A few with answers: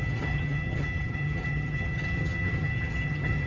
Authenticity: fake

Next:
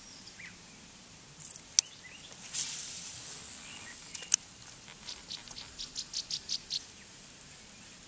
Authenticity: real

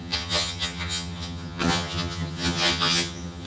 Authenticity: fake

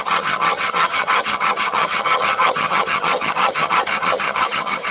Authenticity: fake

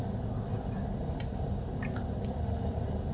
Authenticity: real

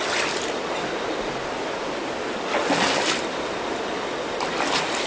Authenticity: real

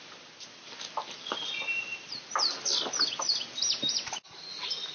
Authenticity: real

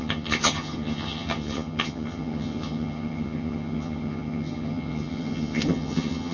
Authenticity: fake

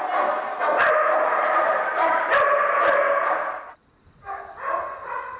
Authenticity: real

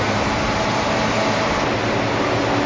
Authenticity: real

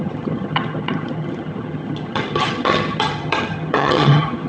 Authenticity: fake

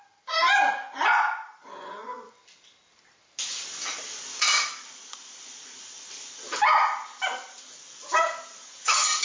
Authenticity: real